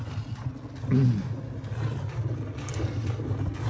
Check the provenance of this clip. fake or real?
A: real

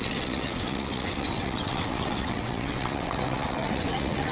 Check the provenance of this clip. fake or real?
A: fake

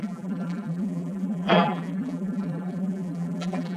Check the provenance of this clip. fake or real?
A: fake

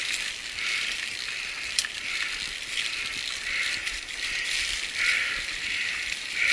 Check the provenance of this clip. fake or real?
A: real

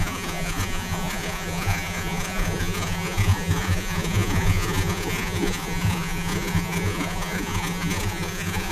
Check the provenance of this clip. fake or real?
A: fake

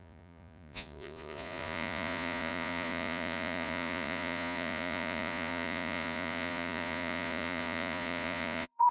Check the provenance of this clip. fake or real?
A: fake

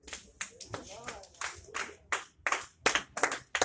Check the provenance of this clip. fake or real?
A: real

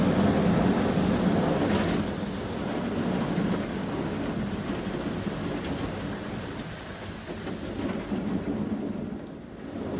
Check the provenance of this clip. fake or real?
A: real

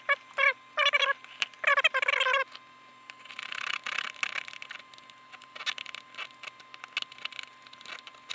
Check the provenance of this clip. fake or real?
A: real